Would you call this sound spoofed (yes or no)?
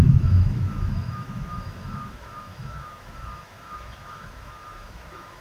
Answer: yes